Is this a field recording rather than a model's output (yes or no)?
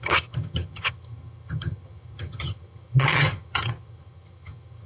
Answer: no